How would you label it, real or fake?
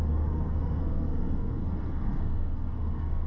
fake